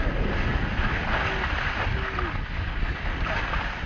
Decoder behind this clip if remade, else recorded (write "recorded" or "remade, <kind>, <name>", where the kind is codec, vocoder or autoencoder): recorded